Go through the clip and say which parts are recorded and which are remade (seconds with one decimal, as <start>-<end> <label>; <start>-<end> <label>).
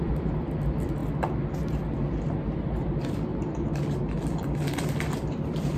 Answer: 0.0-1.0 remade; 1.0-2.4 recorded; 2.4-3.3 remade; 3.3-4.4 recorded; 4.4-5.8 remade